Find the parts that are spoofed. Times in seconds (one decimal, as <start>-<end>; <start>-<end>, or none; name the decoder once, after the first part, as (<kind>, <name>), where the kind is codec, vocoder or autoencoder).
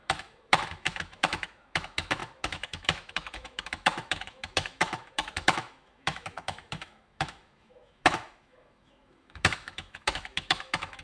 0.0-11.0 (autoencoder, DAC-VAE)